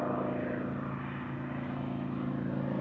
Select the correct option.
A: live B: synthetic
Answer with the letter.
A